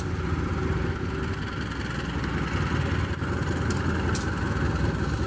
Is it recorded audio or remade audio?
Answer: recorded